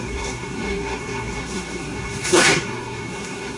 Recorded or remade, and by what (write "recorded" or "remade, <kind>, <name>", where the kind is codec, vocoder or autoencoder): remade, codec, SNAC